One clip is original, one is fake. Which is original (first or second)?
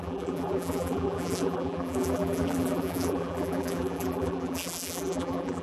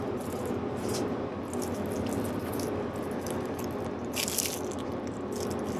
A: second